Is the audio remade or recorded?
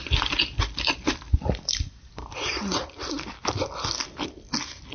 recorded